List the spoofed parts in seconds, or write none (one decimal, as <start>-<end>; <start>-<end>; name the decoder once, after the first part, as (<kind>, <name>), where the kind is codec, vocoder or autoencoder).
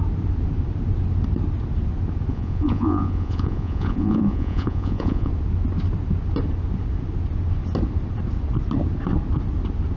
2.3-5.3 (vocoder, Vocos)